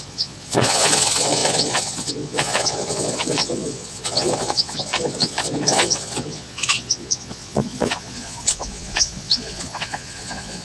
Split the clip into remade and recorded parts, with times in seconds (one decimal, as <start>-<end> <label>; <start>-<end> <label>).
0.0-10.6 remade